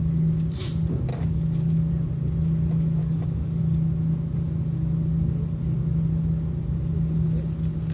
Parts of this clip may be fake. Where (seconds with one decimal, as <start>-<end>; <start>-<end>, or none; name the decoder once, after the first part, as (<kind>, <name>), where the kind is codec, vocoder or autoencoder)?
1.1-1.9 (codec, DAC); 3.0-3.6